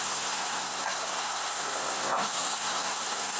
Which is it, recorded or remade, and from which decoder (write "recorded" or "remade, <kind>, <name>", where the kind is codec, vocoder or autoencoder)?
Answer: remade, codec, SNAC